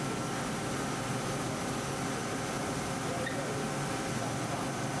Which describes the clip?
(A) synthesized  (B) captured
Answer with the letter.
B